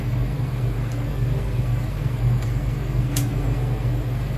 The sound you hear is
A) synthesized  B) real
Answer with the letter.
A